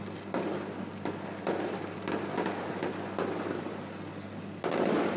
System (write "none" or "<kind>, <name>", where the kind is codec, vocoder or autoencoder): none